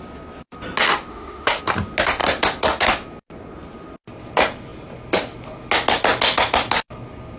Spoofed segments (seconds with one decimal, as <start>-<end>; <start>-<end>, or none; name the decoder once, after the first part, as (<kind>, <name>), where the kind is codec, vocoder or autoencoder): 1.1-1.6 (autoencoder, DAC-VAE)